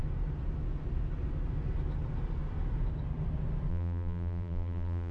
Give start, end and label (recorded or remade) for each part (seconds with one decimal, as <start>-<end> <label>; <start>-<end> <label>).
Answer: 0.0-3.7 recorded; 3.7-5.1 remade